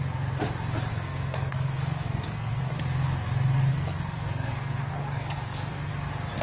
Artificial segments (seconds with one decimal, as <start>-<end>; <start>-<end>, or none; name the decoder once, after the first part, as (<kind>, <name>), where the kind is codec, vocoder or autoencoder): 0.9-2.7 (codec, SNAC); 3.7-5.9